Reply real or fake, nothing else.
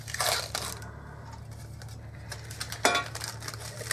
real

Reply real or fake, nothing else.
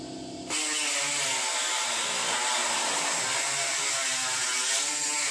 real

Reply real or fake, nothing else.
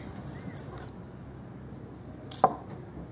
real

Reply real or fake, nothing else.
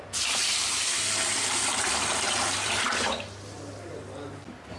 fake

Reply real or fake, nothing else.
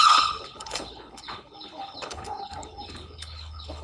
fake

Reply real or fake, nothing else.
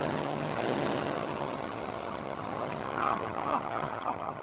fake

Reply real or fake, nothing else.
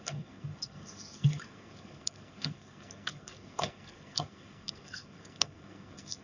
fake